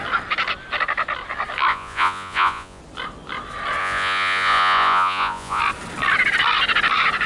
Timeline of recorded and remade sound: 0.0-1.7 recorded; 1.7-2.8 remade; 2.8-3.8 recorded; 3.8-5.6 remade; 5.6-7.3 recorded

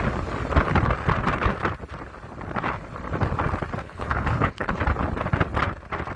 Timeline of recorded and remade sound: 0.0-3.8 recorded; 3.8-4.8 remade; 4.8-6.2 recorded

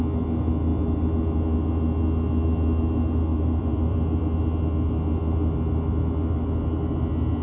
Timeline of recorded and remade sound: 0.0-3.3 recorded; 3.3-4.4 remade; 4.4-7.4 recorded

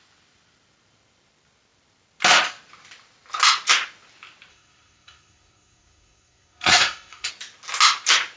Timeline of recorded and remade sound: 0.0-4.5 recorded; 4.5-7.3 remade; 7.3-8.4 recorded

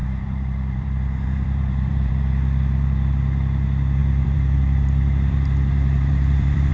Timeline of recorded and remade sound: 0.0-2.1 remade; 2.1-4.0 recorded; 4.0-6.7 remade

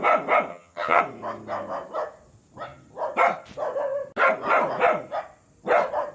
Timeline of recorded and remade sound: 0.0-0.5 recorded; 0.5-1.0 remade; 1.0-6.1 recorded

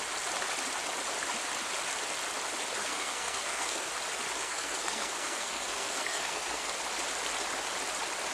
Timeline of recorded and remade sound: 0.0-2.8 recorded; 2.8-3.9 remade; 3.9-4.4 recorded; 4.4-6.7 remade; 6.7-8.3 recorded

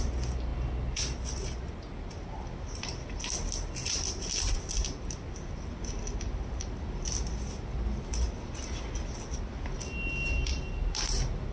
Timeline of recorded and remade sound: 0.0-11.5 recorded